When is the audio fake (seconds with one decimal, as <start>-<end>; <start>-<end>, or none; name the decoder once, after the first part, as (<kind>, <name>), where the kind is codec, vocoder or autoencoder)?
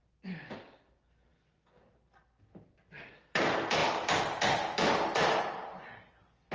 none